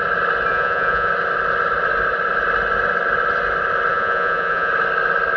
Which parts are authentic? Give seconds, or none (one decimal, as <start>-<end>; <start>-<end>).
0.0-0.5; 1.1-3.9; 4.7-5.4